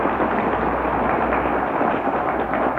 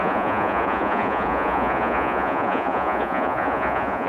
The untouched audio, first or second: first